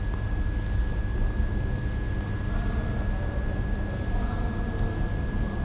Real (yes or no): yes